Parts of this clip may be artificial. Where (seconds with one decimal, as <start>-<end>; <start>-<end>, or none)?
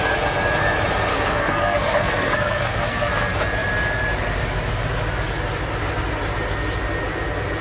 1.1-3.1